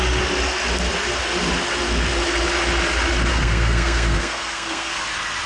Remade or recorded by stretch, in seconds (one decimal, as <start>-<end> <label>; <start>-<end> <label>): 0.0-3.3 recorded; 3.3-5.0 remade; 5.0-5.5 recorded